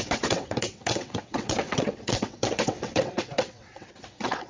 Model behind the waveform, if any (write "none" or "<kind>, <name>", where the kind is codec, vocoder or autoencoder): vocoder, WaveNeXt